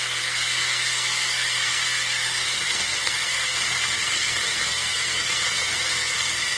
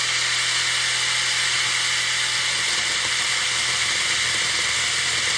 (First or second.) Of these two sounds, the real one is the second